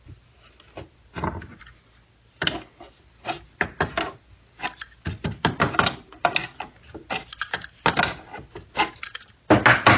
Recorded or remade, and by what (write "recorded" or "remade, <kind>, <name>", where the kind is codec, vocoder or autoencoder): recorded